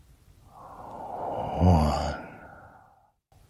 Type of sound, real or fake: real